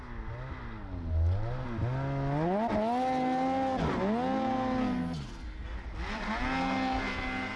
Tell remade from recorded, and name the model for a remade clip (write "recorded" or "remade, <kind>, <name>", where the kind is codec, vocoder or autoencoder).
recorded